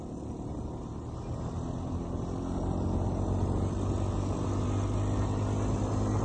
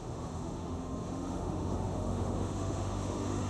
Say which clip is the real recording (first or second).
first